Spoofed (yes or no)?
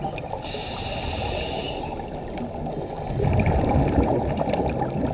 no